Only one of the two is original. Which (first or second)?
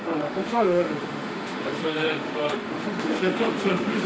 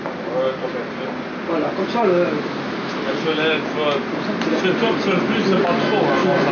second